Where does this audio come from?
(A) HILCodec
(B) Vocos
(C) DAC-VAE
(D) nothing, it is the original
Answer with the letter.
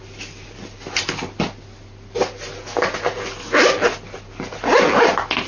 D